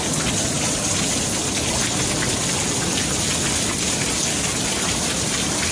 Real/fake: real